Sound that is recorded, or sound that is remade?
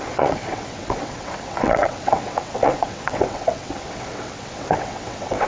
remade